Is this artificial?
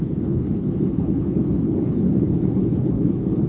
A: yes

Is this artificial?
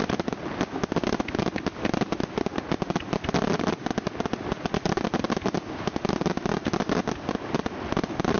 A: no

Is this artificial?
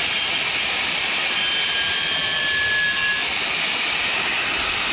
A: no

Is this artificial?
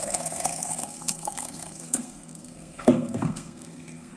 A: yes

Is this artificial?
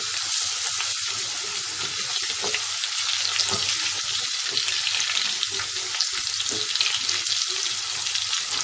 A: no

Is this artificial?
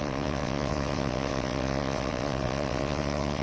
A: yes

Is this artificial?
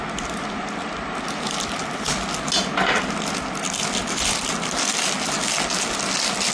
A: no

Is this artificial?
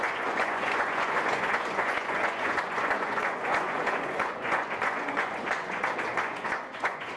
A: yes